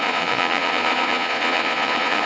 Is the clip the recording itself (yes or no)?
no